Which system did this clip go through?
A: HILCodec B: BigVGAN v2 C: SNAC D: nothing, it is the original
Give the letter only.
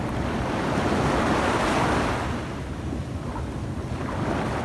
D